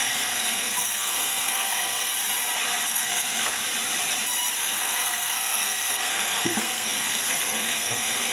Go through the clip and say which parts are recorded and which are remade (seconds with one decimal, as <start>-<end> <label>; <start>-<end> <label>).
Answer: 0.0-2.1 remade; 2.1-2.9 recorded; 2.9-3.6 remade; 3.6-4.5 recorded; 4.5-8.3 remade